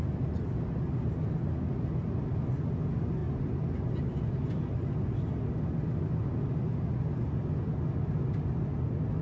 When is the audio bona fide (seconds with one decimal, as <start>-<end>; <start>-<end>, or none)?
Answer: 0.0-9.2